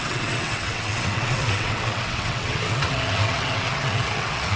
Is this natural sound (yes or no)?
no